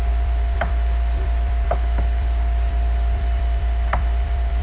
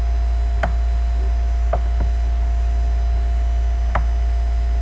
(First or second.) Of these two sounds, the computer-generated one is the first